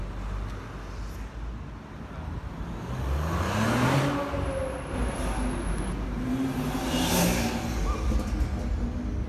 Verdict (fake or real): real